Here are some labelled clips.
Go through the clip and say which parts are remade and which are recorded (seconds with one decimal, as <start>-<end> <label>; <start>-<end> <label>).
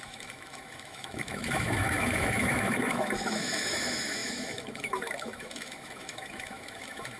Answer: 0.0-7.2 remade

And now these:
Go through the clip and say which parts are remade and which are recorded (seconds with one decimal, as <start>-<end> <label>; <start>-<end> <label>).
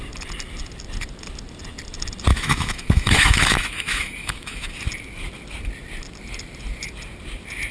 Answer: 0.0-2.3 recorded; 2.3-4.7 remade; 4.7-7.7 recorded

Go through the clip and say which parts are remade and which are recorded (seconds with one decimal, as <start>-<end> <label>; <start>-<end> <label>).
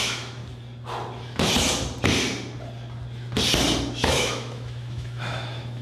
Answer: 0.0-0.4 remade; 0.4-3.9 recorded; 3.9-5.8 remade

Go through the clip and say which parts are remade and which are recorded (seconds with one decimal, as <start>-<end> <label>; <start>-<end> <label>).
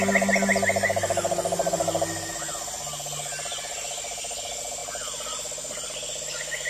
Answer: 0.0-6.7 recorded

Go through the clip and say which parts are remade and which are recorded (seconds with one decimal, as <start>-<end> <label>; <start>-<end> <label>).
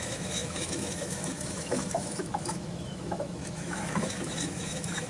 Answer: 0.0-5.1 remade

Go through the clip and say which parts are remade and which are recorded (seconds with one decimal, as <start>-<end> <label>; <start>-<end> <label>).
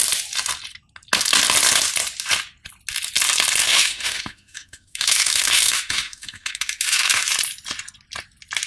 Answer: 0.0-3.6 recorded; 3.6-7.3 remade; 7.3-8.7 recorded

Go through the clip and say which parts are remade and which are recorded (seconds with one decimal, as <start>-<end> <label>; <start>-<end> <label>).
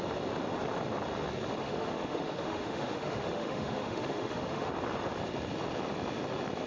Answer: 0.0-1.6 recorded; 1.6-4.7 remade; 4.7-6.7 recorded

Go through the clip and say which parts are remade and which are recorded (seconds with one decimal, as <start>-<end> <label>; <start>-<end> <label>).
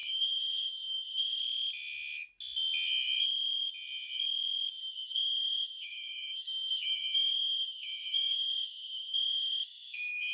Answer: 0.0-1.4 remade; 1.4-4.8 recorded; 4.8-10.3 remade